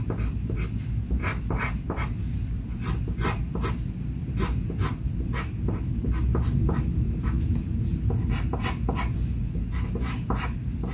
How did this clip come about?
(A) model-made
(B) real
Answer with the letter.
B